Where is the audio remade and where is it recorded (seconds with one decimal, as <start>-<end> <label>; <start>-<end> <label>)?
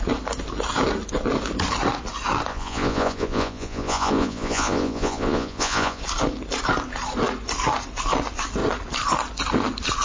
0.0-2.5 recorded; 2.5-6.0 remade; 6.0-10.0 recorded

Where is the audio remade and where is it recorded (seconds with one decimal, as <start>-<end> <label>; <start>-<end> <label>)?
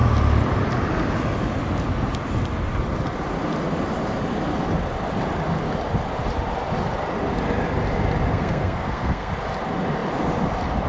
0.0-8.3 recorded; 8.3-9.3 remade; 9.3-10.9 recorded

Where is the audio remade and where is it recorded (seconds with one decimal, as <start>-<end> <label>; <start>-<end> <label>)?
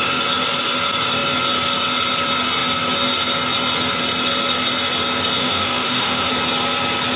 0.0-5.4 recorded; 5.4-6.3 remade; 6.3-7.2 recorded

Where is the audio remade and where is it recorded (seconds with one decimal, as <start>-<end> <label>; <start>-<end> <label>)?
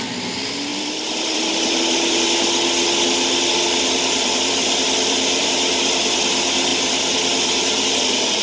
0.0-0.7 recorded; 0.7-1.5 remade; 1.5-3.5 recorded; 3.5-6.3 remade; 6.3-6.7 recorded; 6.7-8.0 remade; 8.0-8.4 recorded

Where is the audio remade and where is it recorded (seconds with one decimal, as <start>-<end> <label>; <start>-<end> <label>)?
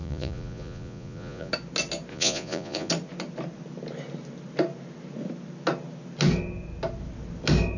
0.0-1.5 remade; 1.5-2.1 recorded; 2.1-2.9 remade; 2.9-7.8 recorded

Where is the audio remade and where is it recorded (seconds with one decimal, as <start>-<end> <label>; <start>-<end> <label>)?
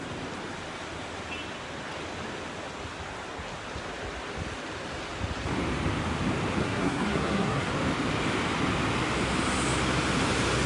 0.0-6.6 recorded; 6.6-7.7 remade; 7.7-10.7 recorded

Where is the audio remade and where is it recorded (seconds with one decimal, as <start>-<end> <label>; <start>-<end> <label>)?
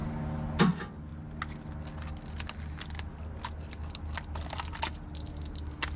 0.0-6.0 recorded